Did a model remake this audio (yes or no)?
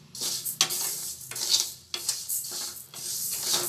no